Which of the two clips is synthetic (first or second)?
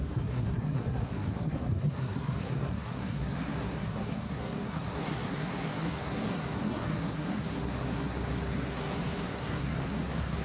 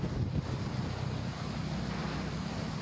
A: first